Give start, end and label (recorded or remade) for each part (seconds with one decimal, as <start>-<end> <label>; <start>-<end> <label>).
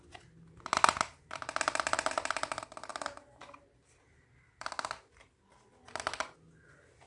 0.0-2.9 recorded; 2.9-4.7 remade; 4.7-7.1 recorded